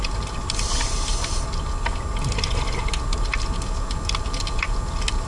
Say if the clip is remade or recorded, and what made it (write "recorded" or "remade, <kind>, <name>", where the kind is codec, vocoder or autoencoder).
recorded